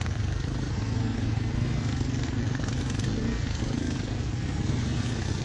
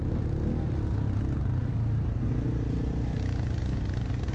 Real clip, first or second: second